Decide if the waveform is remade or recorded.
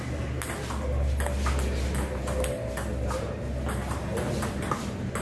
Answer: recorded